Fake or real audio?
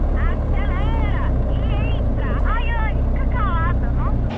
real